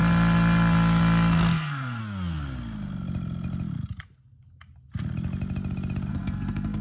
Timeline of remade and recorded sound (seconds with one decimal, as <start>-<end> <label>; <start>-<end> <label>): 0.0-1.3 recorded; 1.3-2.0 remade; 2.0-6.1 recorded; 6.1-6.8 remade